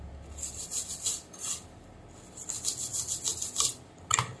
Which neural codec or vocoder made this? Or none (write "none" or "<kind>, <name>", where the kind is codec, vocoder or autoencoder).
none